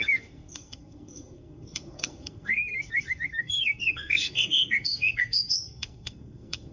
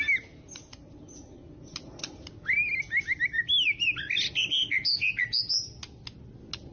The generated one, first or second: first